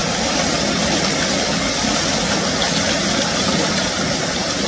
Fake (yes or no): no